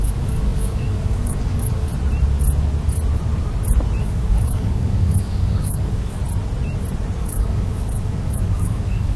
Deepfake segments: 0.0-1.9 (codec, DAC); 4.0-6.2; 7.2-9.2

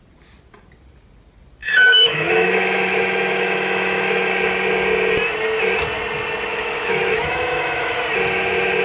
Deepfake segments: 1.6-4.3 (autoencoder, DAC-VAE); 6.5-8.0

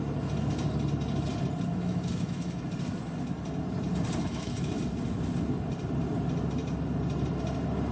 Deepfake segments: 1.7-2.6 (autoencoder, DAC-VAE); 4.2-4.8

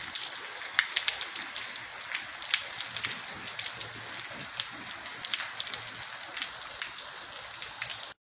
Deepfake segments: none

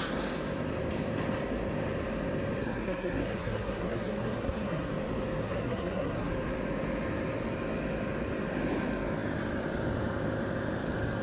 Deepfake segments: 2.6-4.9 (codec, SNAC); 5.4-6.3

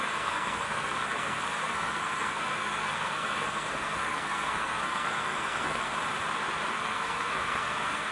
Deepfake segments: 0.0-5.9 (codec, SNAC); 6.7-8.1

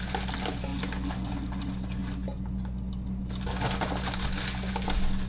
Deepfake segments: none

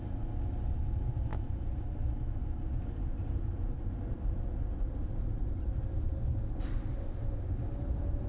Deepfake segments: 6.9-7.7 (autoencoder, DAC-VAE)